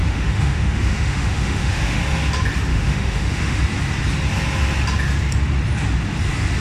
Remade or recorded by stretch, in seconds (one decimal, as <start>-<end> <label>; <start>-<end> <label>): 0.0-2.0 remade; 2.0-2.7 recorded; 2.7-3.6 remade; 3.6-6.6 recorded